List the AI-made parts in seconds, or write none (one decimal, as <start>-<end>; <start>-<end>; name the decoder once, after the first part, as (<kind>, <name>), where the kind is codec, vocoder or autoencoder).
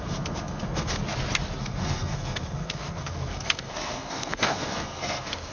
0.0-1.0 (codec, SNAC); 1.6-5.5